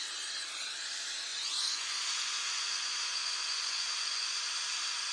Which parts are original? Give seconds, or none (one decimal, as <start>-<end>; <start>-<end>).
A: 0.0-1.3; 4.4-5.1